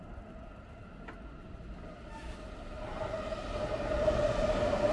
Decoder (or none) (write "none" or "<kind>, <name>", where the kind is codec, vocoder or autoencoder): none